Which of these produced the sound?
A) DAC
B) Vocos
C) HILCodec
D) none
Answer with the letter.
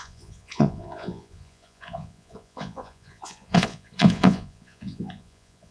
B